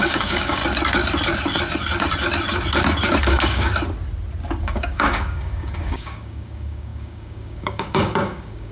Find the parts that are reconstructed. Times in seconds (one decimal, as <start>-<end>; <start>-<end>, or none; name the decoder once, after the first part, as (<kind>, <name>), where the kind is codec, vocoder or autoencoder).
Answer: 0.0-0.6 (codec, DAC); 3.2-3.7; 4.6-8.7